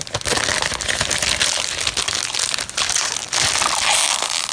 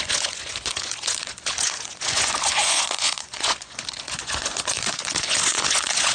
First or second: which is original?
first